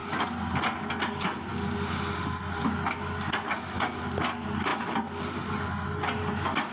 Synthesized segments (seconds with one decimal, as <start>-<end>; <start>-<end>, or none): none